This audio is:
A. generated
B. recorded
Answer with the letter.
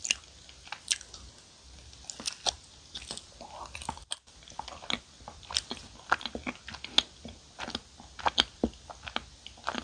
B